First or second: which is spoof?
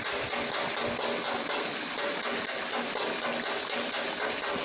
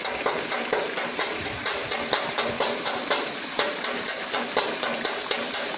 second